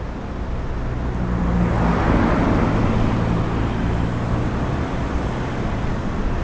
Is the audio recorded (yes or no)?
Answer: yes